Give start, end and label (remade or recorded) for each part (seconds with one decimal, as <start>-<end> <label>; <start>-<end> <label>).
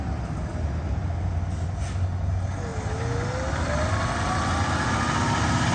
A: 0.0-5.7 recorded